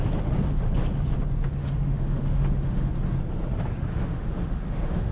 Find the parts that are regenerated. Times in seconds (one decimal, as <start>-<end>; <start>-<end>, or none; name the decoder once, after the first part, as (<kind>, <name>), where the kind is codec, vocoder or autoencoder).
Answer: 1.6-2.9 (autoencoder, DAC-VAE); 3.9-5.1